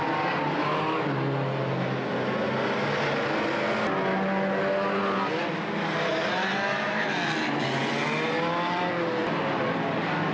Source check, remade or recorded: recorded